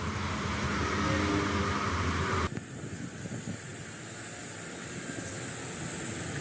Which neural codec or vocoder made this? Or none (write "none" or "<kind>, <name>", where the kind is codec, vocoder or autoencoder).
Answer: none